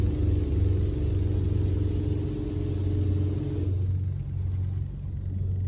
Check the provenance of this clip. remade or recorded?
recorded